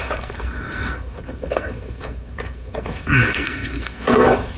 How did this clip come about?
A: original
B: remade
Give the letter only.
B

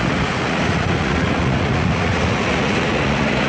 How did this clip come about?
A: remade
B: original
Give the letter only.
A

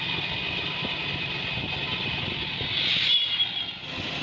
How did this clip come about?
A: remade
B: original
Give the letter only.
B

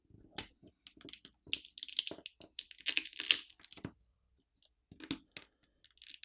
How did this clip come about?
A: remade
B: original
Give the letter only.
B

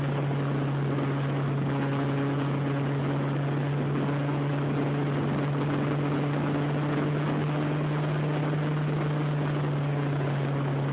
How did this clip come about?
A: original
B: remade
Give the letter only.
A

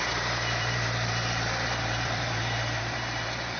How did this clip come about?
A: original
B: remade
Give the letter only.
B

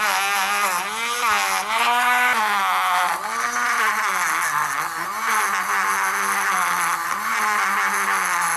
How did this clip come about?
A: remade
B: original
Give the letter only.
B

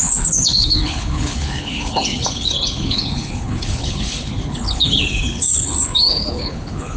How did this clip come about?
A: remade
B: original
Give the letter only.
A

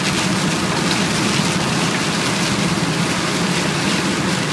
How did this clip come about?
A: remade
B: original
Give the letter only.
B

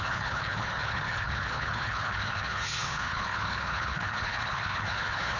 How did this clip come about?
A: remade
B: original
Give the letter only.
A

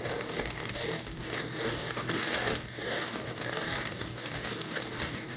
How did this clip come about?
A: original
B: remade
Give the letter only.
B